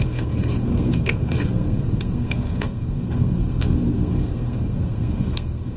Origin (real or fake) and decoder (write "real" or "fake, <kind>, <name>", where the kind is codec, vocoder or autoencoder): fake, codec, SNAC